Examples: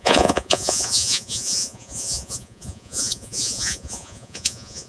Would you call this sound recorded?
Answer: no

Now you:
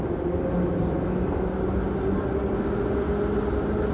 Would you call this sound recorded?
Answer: yes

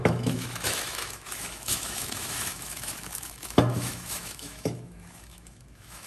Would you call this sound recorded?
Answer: no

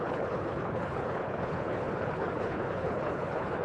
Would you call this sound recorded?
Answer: no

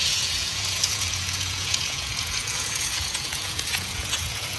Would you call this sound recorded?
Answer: no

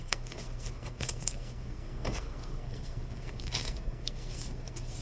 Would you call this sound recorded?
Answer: no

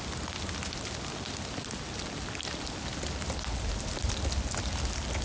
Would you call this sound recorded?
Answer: yes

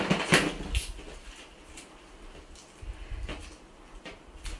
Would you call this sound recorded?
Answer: yes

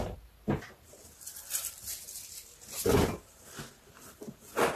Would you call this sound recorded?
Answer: yes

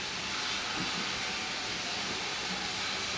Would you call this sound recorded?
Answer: yes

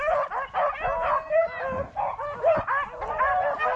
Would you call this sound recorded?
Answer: yes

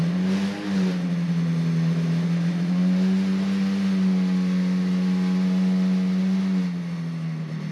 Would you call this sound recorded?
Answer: yes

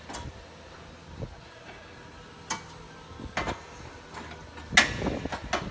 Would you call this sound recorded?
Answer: yes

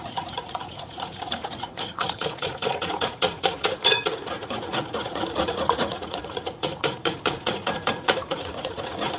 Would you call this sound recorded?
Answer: no